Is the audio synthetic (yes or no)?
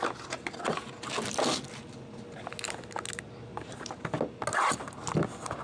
no